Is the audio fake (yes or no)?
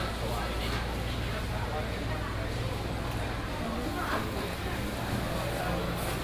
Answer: no